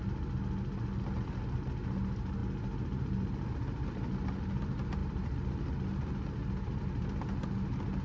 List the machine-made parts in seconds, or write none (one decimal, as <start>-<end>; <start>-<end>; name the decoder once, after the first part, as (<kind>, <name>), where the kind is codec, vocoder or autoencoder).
none